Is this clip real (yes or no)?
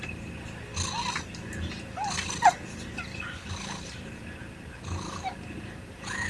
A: yes